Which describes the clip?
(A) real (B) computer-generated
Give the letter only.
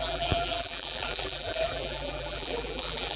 B